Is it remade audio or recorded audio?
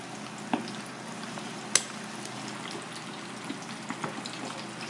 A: recorded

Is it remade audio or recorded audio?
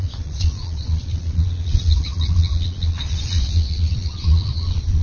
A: remade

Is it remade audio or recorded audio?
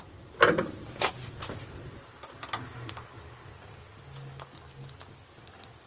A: recorded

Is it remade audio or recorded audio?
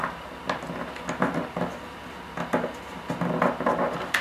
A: recorded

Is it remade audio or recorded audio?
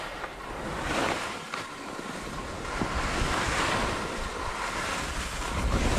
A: recorded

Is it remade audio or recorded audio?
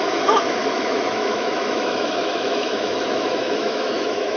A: remade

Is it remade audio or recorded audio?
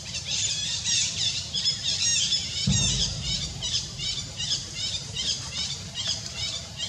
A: remade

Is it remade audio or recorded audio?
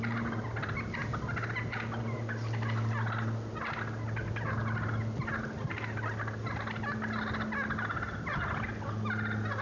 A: recorded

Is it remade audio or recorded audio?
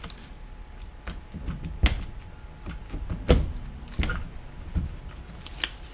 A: recorded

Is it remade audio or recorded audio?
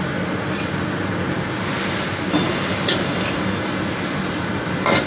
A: recorded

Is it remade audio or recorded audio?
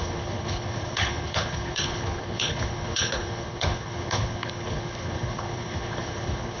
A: remade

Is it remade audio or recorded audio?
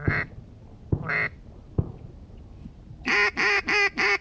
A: recorded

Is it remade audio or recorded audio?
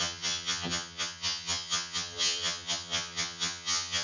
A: remade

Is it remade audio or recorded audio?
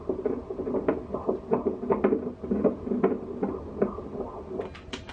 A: recorded